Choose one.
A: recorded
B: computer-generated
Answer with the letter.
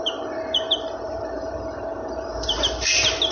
B